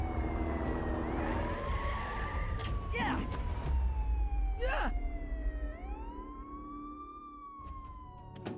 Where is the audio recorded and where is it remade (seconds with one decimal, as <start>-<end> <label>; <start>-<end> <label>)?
0.0-2.6 remade; 2.6-3.1 recorded; 3.1-8.6 remade